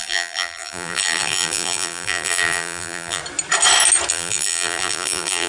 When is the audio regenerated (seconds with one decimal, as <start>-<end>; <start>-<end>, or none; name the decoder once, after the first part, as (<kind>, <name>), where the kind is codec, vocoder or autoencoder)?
0.0-3.2 (vocoder, BigVGAN v2); 4.1-5.5